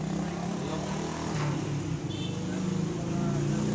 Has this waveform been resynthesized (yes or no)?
no